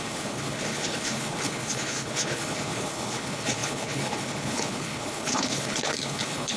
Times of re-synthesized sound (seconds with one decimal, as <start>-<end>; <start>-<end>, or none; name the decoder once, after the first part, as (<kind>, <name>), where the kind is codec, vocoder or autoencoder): 0.0-6.6 (codec, HILCodec)